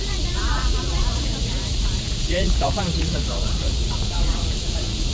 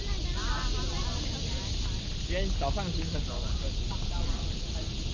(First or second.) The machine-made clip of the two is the first